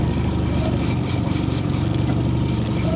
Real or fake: real